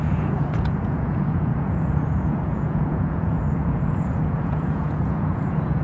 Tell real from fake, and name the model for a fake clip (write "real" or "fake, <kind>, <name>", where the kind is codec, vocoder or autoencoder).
fake, vocoder, Vocos